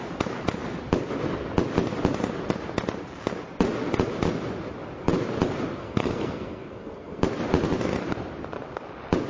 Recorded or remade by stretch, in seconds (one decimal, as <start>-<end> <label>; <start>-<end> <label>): 0.0-5.8 recorded; 5.8-7.2 remade; 7.2-9.3 recorded